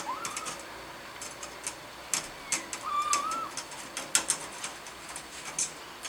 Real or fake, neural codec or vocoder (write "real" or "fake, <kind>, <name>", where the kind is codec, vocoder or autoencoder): real